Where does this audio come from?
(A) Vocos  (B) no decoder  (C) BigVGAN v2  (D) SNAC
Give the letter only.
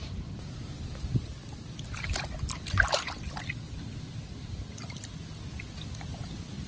B